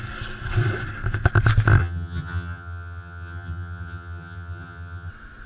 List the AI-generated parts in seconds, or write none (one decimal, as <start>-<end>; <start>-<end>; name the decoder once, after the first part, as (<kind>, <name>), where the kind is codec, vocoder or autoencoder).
1.8-5.1 (vocoder, HiFi-GAN)